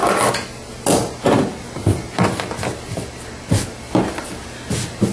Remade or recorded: recorded